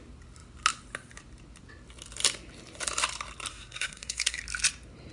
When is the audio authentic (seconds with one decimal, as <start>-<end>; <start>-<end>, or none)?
0.0-3.5; 4.4-5.1